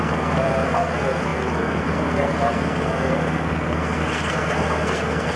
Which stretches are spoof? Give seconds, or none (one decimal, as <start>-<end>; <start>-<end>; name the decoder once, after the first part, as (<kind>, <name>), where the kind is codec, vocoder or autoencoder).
0.0-5.4 (codec, SNAC)